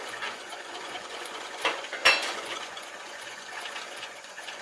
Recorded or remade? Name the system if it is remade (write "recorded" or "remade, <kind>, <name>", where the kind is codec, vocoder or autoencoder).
remade, vocoder, Vocos